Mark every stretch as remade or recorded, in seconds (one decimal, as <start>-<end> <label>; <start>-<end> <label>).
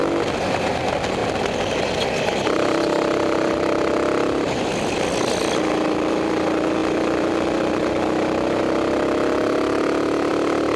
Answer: 0.0-1.2 recorded; 1.2-3.0 remade; 3.0-10.8 recorded